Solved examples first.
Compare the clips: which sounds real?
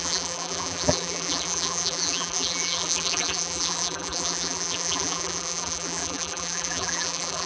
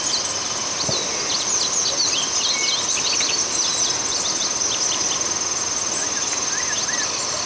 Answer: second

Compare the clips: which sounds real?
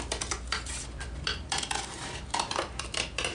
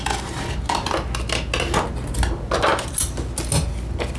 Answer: second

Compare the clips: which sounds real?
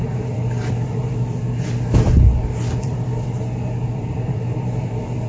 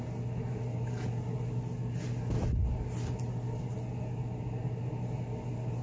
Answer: second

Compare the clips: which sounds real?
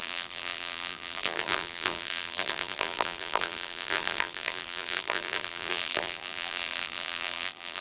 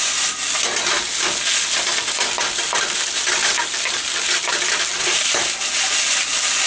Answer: second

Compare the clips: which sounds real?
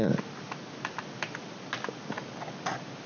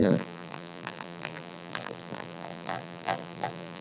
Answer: first